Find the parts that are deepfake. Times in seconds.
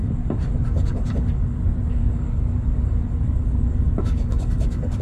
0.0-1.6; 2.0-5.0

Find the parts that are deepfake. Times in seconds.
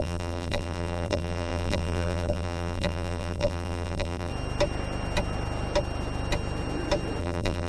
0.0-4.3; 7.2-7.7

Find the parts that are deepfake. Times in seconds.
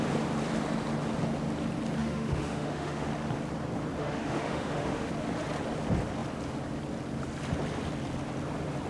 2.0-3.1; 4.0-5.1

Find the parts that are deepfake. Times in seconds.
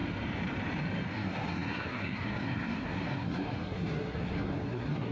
1.1-5.1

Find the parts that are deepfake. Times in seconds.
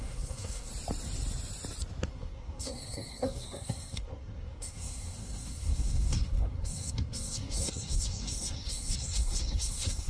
0.0-0.7; 2.1-10.1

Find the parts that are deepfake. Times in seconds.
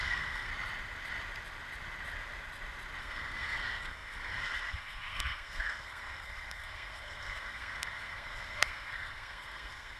0.0-0.5; 3.0-10.0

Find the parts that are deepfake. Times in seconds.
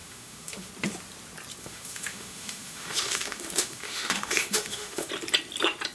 0.0-0.7; 1.6-5.1